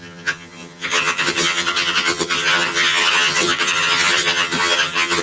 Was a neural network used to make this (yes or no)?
yes